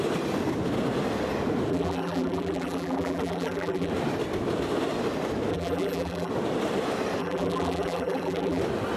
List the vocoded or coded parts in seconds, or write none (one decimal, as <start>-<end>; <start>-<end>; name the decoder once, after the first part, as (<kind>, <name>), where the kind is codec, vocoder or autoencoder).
1.7-3.9 (vocoder, BigVGAN v2); 5.5-6.3; 7.2-8.6